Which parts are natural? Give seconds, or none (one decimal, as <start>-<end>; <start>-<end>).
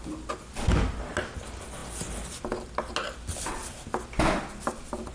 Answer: 0.0-5.1